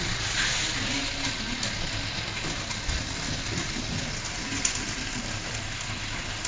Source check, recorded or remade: recorded